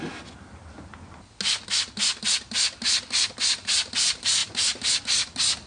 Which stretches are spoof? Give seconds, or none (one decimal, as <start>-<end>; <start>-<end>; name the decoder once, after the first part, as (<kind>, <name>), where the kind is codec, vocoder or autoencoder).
none